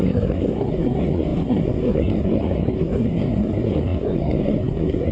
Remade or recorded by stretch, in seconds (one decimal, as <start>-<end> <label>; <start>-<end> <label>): 0.0-5.1 remade